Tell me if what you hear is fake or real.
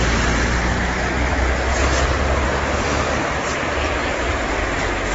real